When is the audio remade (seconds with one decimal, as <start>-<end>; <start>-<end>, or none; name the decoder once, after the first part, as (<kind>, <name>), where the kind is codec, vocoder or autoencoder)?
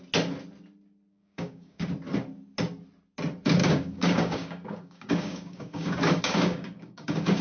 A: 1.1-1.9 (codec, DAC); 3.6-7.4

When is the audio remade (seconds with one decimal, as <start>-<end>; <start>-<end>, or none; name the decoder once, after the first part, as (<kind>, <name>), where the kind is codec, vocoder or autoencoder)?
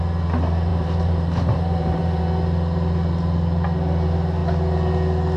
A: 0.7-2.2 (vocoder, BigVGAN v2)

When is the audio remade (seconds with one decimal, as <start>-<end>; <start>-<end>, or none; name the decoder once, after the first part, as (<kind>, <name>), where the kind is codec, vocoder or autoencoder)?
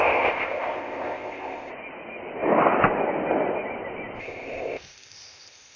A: 0.0-1.7 (codec, ZipCodec); 4.2-5.8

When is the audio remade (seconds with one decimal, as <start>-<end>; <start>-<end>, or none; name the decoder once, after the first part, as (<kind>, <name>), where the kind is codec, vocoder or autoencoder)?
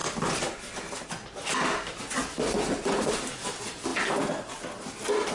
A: none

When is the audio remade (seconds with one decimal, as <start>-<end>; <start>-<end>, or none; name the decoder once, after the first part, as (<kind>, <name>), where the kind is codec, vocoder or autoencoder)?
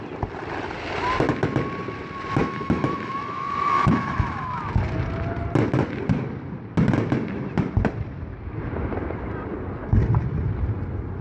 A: 2.4-4.6 (autoencoder, DAC-VAE)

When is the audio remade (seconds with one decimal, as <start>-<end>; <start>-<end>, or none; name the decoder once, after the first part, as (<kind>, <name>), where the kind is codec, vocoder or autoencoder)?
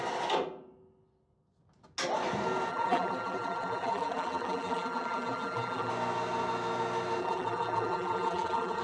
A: 2.7-5.9 (vocoder, BigVGAN v2); 7.2-8.8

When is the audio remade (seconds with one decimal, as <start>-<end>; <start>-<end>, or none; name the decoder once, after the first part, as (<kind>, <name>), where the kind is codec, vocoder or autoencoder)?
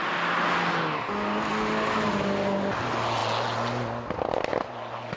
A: none